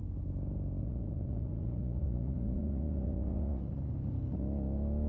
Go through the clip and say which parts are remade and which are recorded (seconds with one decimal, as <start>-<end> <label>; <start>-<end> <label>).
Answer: 0.0-0.8 recorded; 0.8-3.9 remade; 3.9-5.1 recorded